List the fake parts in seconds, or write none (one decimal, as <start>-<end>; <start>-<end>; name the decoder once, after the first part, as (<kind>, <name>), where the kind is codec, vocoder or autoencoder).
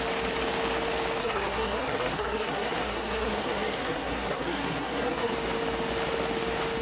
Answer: 1.2-5.3 (codec, SNAC)